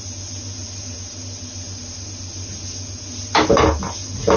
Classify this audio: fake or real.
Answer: real